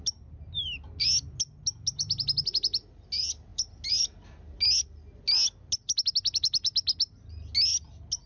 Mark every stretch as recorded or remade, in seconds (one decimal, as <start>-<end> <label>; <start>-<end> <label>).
0.0-8.3 recorded